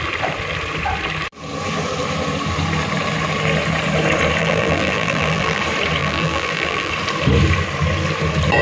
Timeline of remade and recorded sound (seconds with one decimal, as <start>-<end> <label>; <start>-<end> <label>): 0.0-4.4 recorded; 4.4-5.6 remade; 5.6-6.0 recorded; 6.0-6.9 remade; 6.9-8.6 recorded